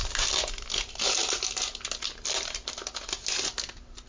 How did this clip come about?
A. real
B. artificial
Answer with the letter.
A